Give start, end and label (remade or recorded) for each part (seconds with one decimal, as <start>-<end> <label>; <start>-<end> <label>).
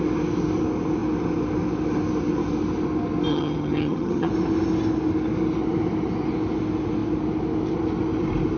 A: 0.0-3.3 recorded; 3.3-4.3 remade; 4.3-8.6 recorded